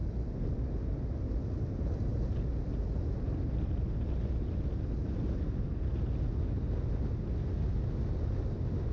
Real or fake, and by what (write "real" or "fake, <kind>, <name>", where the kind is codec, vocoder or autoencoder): real